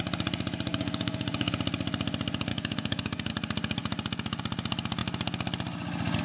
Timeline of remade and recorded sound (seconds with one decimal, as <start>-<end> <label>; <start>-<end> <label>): 0.0-0.7 recorded; 0.7-1.5 remade; 1.5-2.5 recorded; 2.5-3.3 remade; 3.3-6.2 recorded